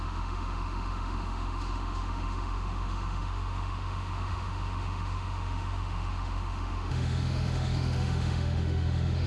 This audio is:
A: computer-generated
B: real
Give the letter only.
A